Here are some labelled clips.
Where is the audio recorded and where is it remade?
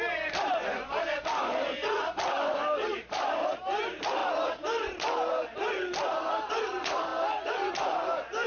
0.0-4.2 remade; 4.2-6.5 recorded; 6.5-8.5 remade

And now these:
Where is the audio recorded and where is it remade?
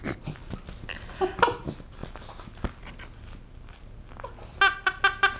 0.0-5.4 recorded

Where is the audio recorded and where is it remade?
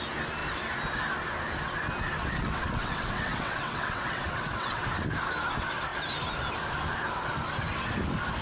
0.0-2.2 recorded; 2.2-4.9 remade; 4.9-8.4 recorded